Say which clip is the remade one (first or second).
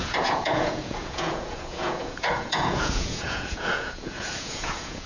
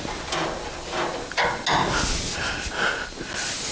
first